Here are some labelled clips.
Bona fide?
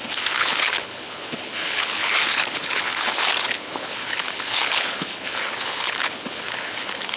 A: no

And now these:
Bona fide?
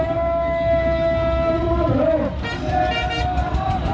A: yes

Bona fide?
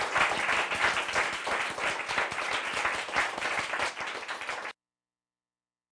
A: yes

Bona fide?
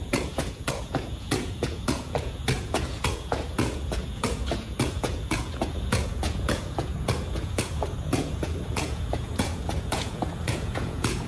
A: no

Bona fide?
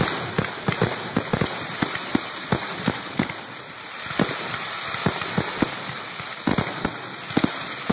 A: no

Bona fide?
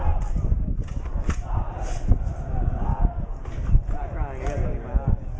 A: yes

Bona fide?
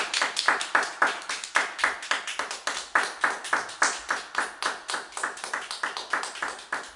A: yes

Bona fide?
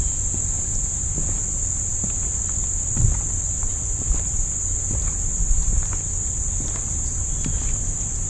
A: no